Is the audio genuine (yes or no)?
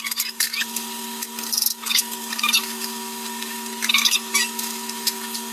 no